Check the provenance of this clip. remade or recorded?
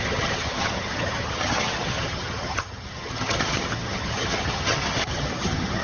remade